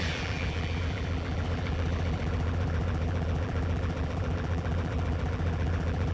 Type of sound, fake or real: fake